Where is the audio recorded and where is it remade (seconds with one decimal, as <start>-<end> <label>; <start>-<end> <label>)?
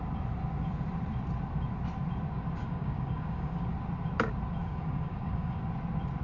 0.0-2.6 recorded; 2.6-3.6 remade; 3.6-4.6 recorded; 4.6-5.6 remade; 5.6-6.2 recorded